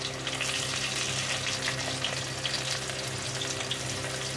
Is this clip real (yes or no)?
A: yes